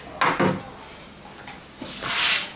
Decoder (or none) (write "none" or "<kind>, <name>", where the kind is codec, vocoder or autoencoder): none